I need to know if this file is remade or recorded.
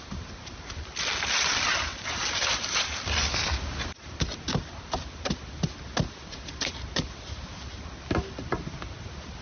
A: recorded